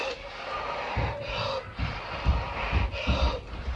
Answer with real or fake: real